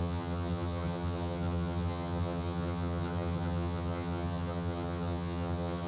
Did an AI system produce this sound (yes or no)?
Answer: yes